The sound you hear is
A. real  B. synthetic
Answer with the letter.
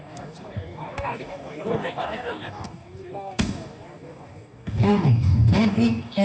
B